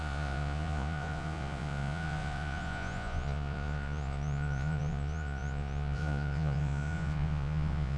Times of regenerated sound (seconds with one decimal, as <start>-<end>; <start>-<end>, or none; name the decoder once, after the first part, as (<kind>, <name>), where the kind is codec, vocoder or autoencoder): 0.0-8.0 (vocoder, Vocos)

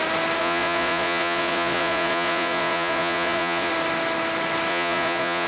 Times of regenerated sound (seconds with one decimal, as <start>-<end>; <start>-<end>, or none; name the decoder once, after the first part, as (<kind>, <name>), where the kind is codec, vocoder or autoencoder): 0.4-3.7 (vocoder, Vocos); 4.7-5.5

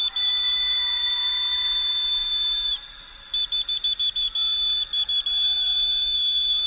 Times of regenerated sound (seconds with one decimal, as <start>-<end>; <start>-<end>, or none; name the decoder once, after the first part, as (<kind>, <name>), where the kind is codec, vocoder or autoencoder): none

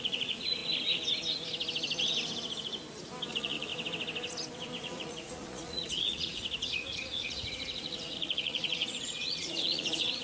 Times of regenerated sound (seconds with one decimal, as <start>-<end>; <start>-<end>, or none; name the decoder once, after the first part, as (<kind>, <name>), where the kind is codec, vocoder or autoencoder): 0.0-0.6 (vocoder, Vocos); 3.3-3.7; 4.8-10.2